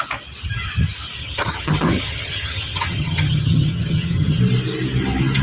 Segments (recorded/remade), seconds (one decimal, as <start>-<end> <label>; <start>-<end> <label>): 0.0-1.2 recorded; 1.2-4.4 remade; 4.4-5.4 recorded